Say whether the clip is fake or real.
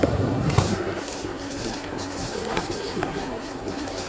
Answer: fake